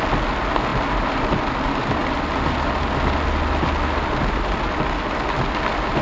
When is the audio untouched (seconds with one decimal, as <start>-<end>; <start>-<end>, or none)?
0.0-6.0